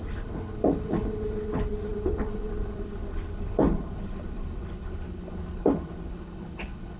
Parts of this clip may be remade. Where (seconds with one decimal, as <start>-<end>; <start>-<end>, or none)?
0.0-7.0